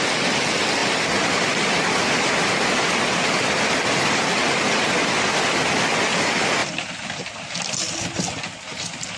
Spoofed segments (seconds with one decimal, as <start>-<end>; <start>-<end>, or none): 0.8-4.4; 6.6-7.8